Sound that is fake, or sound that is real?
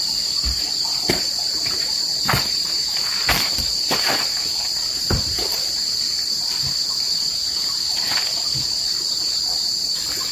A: fake